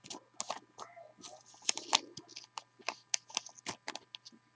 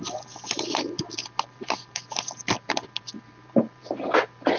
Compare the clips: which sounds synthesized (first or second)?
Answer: second